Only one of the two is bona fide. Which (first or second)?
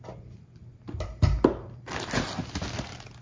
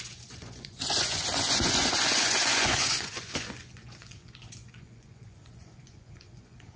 first